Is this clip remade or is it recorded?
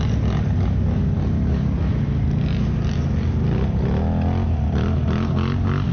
recorded